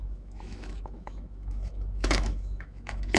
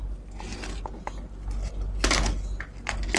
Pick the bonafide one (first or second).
second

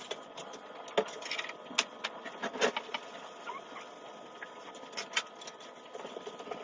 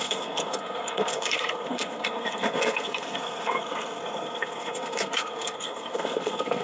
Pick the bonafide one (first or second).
first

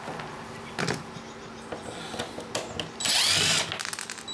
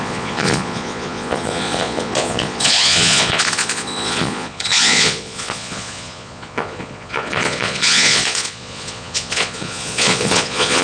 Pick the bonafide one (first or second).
first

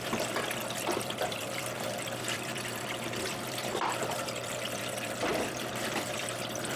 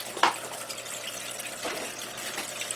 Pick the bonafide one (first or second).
second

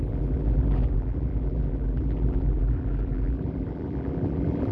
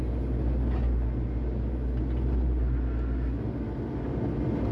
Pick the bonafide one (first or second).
second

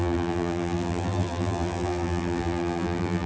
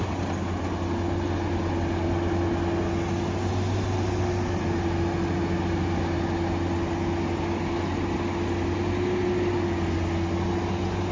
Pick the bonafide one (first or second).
second